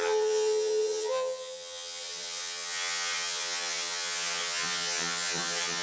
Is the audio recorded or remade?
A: remade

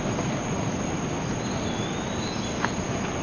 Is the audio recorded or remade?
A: recorded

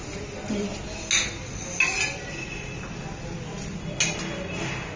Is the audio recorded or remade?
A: recorded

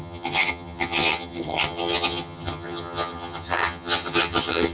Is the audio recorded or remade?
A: remade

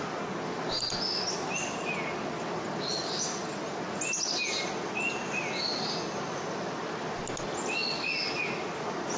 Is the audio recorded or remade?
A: recorded